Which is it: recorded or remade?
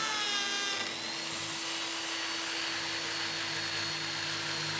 recorded